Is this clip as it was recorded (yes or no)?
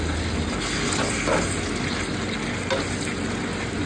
yes